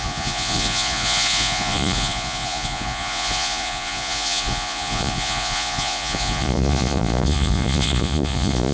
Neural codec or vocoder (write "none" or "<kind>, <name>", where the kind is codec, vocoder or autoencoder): vocoder, Vocos